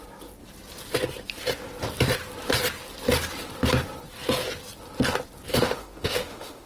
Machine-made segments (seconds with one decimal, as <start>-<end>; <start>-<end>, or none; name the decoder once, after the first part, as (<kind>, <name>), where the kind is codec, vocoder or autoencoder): 5.5-6.7 (autoencoder, DAC-VAE)